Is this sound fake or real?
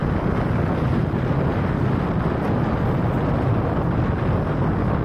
real